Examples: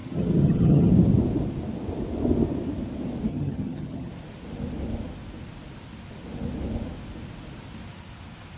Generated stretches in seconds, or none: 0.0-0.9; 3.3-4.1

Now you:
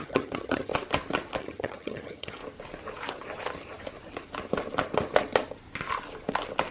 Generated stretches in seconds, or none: 0.0-0.7; 1.4-2.4